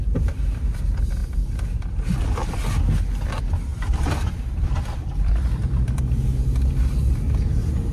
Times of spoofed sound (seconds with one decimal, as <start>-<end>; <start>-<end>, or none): 3.7-6.1